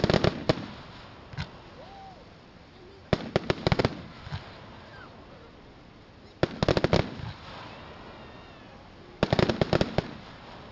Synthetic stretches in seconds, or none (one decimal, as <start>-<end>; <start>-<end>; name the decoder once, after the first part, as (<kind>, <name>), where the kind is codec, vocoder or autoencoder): none